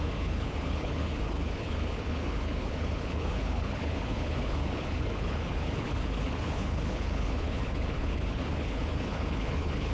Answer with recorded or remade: remade